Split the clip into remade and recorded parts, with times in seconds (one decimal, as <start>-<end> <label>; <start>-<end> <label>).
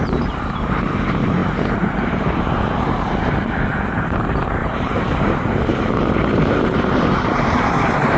0.0-8.2 remade